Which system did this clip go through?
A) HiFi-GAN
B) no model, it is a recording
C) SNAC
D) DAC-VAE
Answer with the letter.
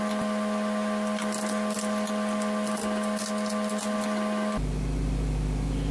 B